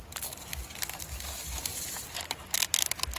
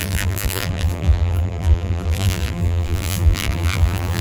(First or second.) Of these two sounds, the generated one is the second